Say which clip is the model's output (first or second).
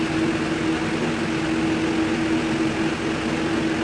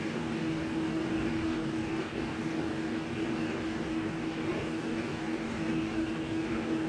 second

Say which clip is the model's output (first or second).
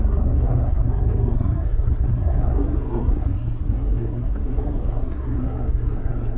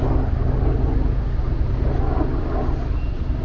first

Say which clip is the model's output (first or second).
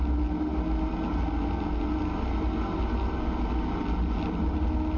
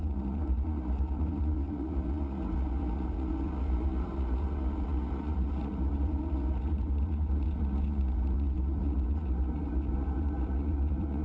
second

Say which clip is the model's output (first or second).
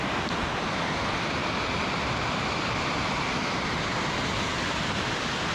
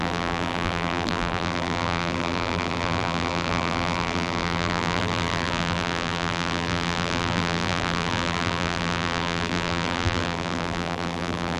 second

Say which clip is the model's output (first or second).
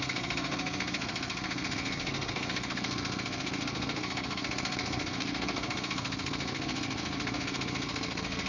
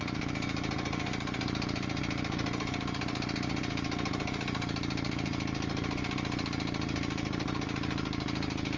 first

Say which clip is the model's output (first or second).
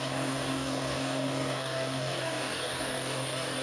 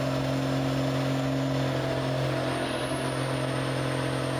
first